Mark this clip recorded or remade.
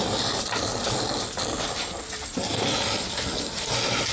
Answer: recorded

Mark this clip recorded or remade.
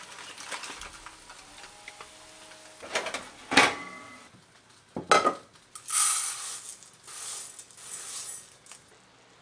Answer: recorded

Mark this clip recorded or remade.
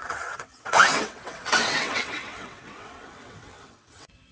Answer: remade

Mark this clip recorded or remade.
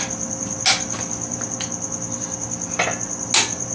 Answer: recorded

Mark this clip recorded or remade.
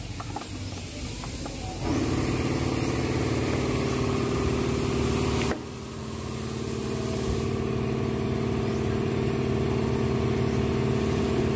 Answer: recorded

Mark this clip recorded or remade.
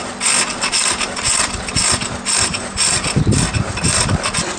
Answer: recorded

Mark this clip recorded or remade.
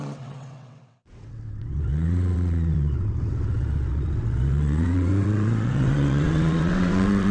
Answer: remade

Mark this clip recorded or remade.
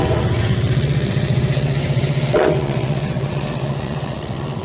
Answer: remade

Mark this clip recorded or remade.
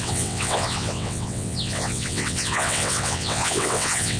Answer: remade